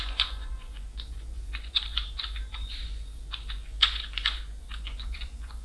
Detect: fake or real fake